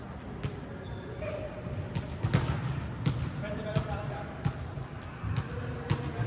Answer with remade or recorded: recorded